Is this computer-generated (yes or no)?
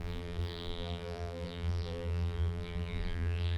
yes